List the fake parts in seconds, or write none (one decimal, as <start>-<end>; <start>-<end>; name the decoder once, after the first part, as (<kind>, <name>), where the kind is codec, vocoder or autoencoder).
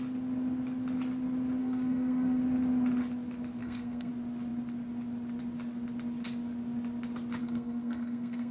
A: 1.6-2.4 (codec, SNAC); 3.6-4.1; 7.4-8.5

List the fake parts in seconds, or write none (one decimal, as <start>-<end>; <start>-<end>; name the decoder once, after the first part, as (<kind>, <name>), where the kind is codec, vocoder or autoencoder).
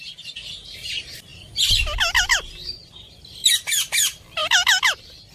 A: 0.0-1.3 (vocoder, BigVGAN v2); 2.2-2.8; 3.6-5.3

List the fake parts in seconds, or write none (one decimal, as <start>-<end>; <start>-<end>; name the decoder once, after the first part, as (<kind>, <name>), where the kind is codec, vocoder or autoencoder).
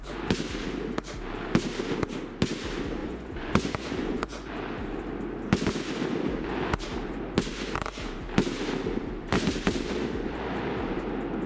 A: 3.0-4.5 (vocoder, Vocos)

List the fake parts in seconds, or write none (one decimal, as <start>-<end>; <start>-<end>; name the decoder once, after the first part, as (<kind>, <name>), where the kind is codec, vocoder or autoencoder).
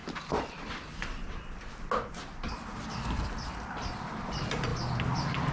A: none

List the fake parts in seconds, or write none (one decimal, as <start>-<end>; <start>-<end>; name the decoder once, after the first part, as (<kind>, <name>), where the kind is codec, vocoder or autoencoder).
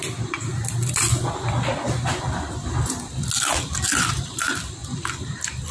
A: 0.0-1.1 (vocoder, BigVGAN v2); 2.5-3.1; 3.7-5.7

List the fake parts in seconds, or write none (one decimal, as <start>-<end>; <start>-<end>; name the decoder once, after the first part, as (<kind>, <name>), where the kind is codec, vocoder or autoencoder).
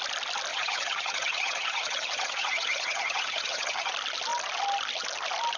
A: 0.5-3.9 (vocoder, HiFi-GAN)